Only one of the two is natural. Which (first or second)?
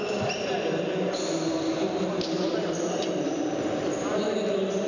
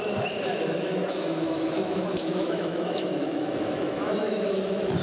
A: first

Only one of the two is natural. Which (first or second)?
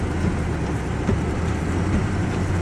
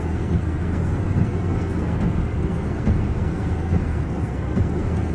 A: first